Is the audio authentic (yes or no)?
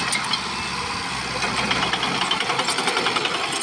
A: yes